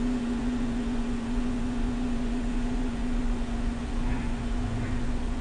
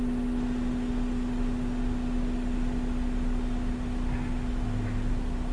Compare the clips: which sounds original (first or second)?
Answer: second